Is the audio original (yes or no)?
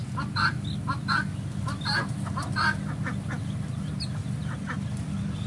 yes